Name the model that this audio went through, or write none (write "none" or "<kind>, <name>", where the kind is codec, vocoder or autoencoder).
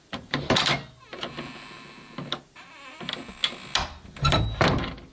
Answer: none